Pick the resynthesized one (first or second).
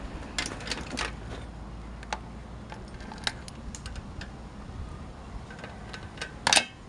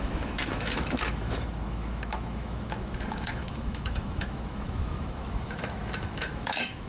second